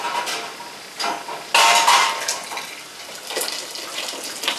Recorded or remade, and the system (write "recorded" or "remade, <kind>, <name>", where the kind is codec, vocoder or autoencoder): recorded